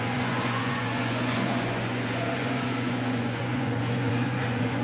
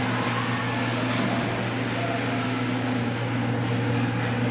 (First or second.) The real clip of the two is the second